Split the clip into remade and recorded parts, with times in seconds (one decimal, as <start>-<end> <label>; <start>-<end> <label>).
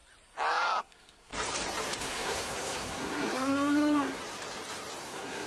0.0-0.8 recorded; 0.8-1.3 remade; 1.3-2.0 recorded; 2.0-4.2 remade; 4.2-5.0 recorded; 5.0-5.5 remade